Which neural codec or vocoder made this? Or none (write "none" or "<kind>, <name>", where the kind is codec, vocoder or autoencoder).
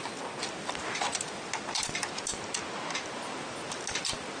none